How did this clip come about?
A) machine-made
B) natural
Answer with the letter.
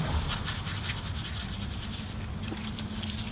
B